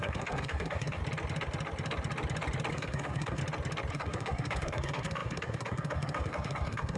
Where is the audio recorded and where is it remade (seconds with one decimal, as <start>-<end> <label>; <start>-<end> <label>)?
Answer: 0.0-1.0 remade; 1.0-2.7 recorded; 2.7-3.4 remade; 3.4-3.9 recorded; 3.9-7.0 remade